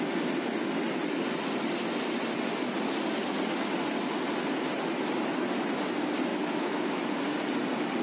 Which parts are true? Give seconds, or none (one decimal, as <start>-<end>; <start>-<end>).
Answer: 0.0-6.3; 7.0-8.0

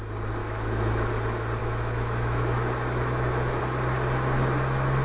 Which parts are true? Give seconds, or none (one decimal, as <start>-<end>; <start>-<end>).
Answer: 0.0-0.4; 1.1-1.6; 3.6-5.0

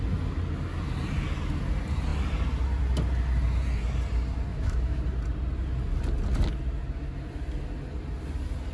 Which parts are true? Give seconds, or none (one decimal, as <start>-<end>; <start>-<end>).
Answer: 0.0-4.5; 5.0-8.7

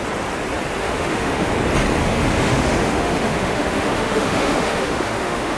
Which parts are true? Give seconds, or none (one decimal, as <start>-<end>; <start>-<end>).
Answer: 0.0-0.8; 1.5-2.0

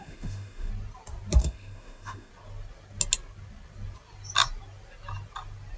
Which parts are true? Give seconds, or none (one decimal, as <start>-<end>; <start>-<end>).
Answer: 0.7-1.4; 2.3-5.8

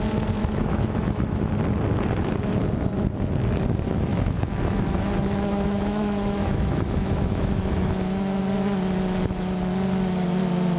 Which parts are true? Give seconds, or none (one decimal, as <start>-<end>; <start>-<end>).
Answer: 0.0-0.4; 1.5-4.1; 8.4-10.8

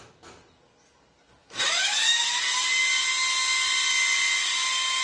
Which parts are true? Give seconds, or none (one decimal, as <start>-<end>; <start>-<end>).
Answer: 0.0-1.4; 2.4-5.0